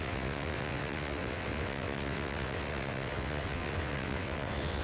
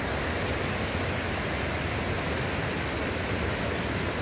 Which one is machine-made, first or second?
first